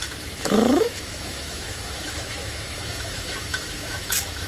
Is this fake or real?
fake